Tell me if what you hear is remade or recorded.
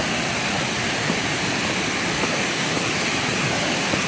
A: recorded